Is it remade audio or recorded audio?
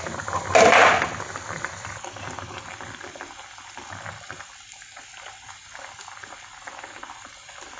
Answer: recorded